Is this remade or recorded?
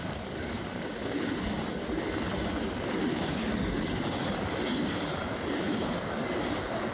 recorded